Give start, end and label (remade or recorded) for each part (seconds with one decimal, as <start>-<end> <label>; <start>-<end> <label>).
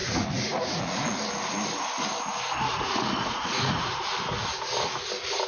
0.0-0.8 remade; 0.8-2.7 recorded; 2.7-4.0 remade; 4.0-5.5 recorded